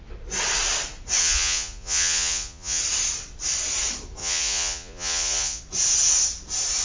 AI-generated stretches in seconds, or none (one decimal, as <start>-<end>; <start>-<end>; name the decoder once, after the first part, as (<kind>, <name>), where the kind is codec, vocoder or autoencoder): 1.2-2.8 (vocoder, Vocos); 4.2-5.6